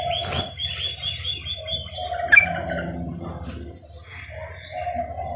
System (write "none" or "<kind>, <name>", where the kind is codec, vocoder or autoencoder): none